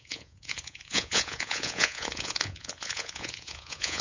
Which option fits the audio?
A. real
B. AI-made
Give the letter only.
B